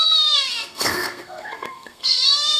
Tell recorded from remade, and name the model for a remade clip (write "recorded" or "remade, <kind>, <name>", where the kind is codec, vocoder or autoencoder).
remade, codec, SNAC